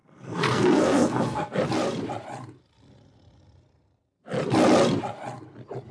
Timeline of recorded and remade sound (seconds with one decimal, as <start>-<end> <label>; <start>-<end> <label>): 0.0-1.6 remade; 1.6-5.9 recorded